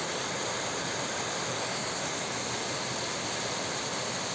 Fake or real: real